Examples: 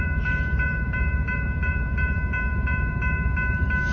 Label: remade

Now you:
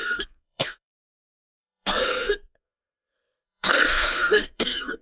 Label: remade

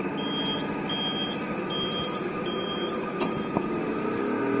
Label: recorded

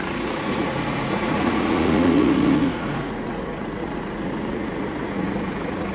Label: remade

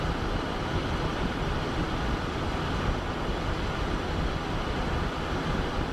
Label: recorded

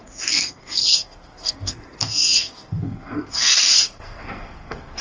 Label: remade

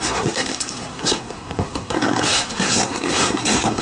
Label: remade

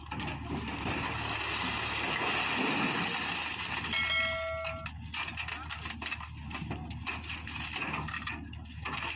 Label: recorded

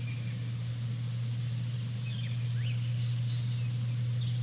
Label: recorded